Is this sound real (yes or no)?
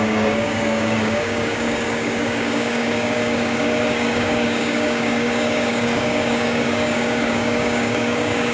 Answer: no